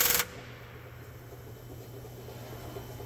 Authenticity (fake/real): real